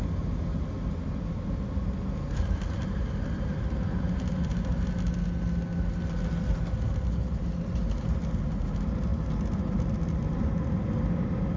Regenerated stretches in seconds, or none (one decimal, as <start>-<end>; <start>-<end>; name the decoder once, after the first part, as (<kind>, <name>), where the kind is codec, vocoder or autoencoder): none